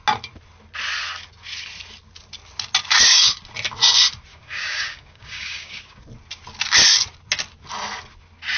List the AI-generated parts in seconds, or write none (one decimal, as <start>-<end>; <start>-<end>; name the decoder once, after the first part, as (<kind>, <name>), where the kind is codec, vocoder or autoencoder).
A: 4.3-6.0 (codec, DAC)